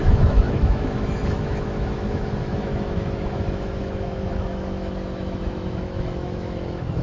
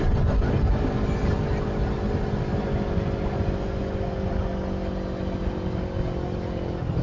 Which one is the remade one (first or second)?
first